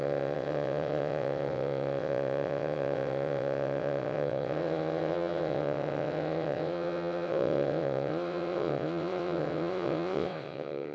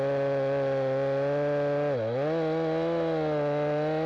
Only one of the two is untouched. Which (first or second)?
second